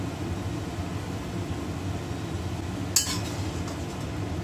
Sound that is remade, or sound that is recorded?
recorded